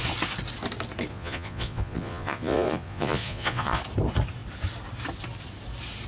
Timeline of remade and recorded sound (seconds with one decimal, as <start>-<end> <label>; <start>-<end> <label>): 0.0-1.1 recorded; 1.1-3.8 remade; 3.8-6.1 recorded

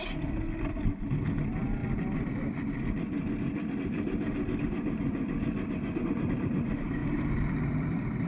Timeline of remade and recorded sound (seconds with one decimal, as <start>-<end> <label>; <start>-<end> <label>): 0.0-8.3 recorded